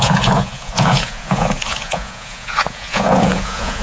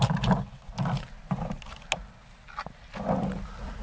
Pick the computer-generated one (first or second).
first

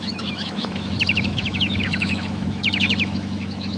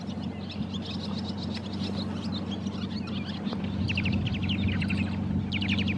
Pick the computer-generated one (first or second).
first